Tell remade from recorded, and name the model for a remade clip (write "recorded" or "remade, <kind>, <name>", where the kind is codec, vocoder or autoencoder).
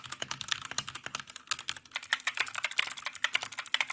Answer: recorded